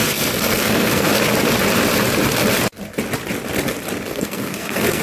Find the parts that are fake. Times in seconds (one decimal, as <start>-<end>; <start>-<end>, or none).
0.0-1.1; 4.1-5.0